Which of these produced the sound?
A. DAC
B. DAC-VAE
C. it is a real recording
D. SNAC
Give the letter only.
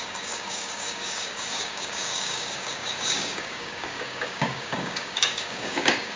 A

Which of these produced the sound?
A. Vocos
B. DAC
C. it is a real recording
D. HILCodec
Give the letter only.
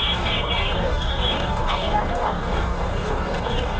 B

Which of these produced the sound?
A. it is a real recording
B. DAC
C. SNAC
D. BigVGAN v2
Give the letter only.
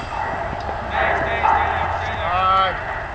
A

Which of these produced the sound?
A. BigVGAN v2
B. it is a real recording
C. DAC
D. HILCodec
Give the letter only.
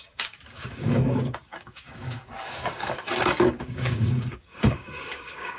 C